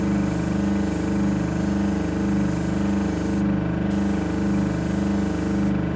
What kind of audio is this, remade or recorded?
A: recorded